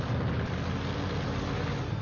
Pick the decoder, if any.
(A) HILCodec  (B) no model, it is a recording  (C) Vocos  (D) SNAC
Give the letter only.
B